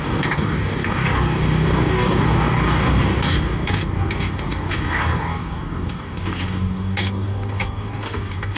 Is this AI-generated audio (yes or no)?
yes